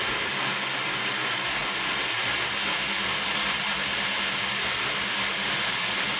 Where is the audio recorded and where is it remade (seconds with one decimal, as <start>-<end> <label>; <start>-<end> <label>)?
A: 0.0-6.2 recorded